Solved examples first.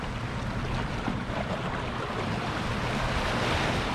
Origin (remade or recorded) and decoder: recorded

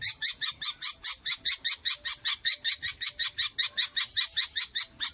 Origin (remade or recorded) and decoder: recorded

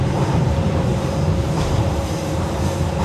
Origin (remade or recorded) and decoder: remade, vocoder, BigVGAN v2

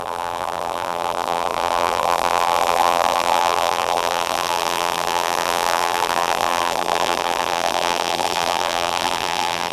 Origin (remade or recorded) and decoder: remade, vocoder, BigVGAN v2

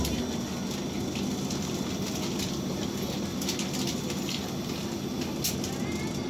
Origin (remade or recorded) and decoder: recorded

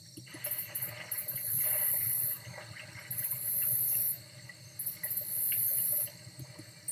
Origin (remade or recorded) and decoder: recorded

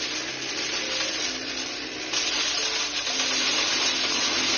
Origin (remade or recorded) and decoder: recorded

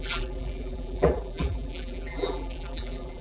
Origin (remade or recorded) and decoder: remade, vocoder, BigVGAN v2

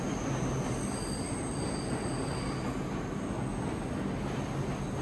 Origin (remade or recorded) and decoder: recorded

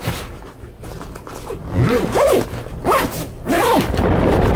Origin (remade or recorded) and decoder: recorded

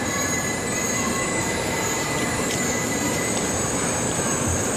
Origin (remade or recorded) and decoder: remade, vocoder, BigVGAN v2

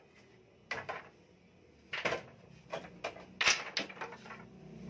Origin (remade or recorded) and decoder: recorded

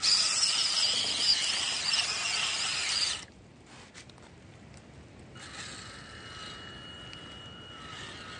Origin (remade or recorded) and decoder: recorded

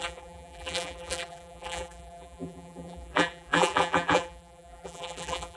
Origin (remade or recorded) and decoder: remade, vocoder, BigVGAN v2